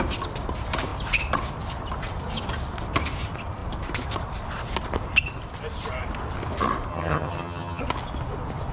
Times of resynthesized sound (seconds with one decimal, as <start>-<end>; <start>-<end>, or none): 6.9-7.8